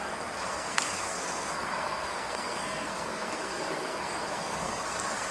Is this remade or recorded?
remade